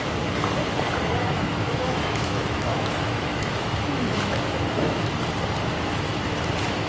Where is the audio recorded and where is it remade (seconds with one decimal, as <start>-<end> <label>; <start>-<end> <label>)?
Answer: 0.0-1.2 recorded; 1.2-5.1 remade; 5.1-6.9 recorded

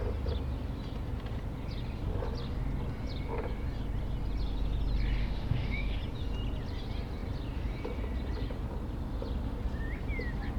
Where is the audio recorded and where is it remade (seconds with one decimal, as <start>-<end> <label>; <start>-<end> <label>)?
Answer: 0.0-5.2 recorded; 5.2-6.0 remade; 6.0-10.6 recorded

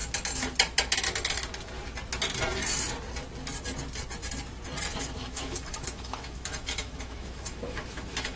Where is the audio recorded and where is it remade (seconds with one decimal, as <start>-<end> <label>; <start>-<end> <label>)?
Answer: 0.0-5.0 recorded; 5.0-8.4 remade

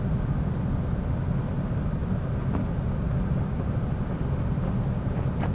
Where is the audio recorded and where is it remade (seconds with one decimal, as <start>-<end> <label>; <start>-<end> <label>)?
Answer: 0.0-5.5 recorded

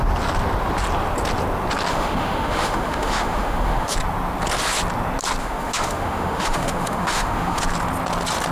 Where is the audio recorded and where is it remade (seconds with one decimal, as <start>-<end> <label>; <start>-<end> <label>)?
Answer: 0.0-1.9 recorded; 1.9-3.9 remade; 3.9-5.4 recorded; 5.4-7.6 remade; 7.6-8.5 recorded